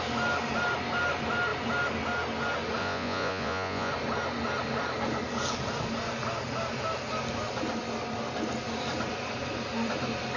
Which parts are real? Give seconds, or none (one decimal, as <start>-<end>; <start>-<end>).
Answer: 0.0-2.8; 3.9-10.4